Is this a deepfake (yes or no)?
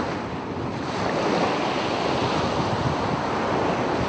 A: no